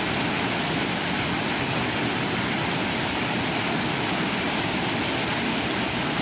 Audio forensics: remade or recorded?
recorded